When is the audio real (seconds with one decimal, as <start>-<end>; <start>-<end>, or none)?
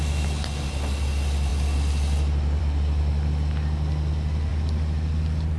0.0-1.5; 2.6-4.5